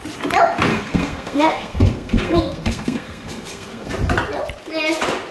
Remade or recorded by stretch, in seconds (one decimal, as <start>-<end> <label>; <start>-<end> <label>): 0.0-0.7 recorded; 0.7-3.9 remade; 3.9-5.3 recorded